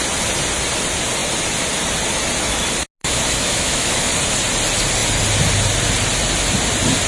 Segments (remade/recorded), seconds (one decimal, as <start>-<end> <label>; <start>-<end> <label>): 0.0-3.0 recorded; 3.0-4.1 remade; 4.1-7.1 recorded